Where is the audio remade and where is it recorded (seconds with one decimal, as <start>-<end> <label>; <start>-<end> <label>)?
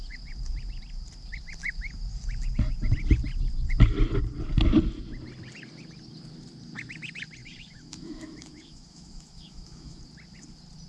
0.0-7.4 recorded; 7.4-10.0 remade; 10.0-10.9 recorded